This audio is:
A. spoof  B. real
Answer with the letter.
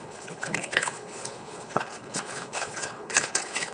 A